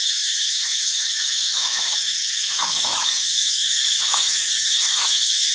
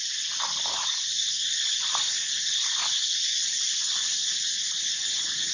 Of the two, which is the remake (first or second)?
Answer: first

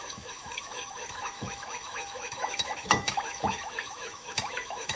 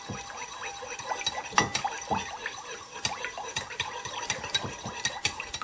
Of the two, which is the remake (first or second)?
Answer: first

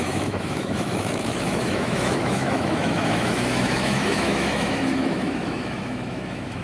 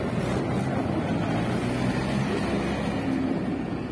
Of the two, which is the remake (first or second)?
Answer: first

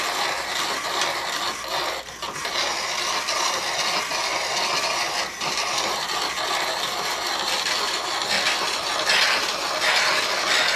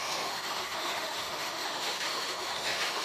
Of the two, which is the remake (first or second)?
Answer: second